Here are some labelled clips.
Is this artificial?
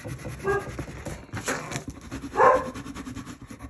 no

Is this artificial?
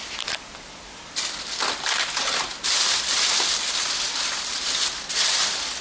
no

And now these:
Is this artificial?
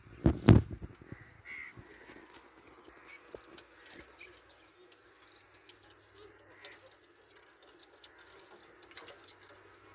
no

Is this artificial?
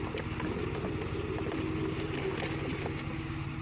no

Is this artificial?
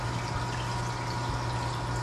no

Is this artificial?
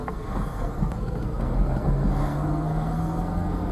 yes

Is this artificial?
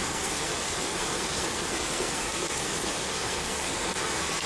yes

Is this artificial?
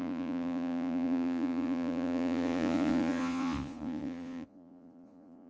yes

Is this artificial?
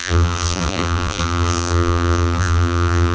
yes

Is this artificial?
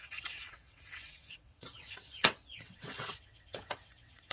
yes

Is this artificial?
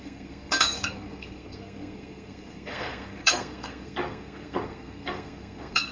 yes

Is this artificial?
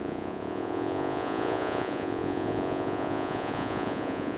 yes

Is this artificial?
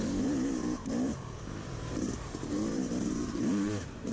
yes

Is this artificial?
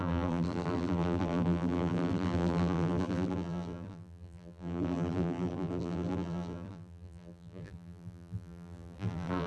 yes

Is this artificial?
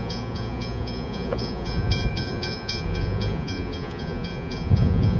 yes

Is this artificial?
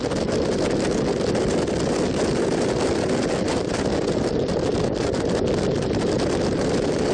no